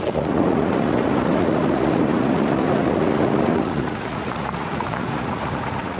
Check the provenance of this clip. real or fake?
fake